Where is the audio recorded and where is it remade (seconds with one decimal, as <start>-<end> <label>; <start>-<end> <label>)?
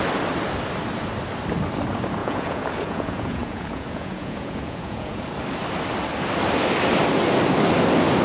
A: 0.0-2.2 recorded; 2.2-5.2 remade; 5.2-8.2 recorded